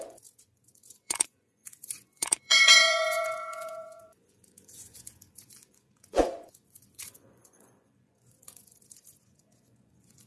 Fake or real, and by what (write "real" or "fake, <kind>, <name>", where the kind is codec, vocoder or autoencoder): fake, vocoder, Vocos